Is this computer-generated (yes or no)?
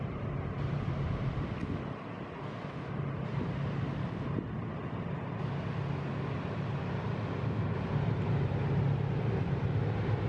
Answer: no